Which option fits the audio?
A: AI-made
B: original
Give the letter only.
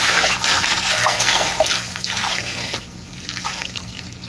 A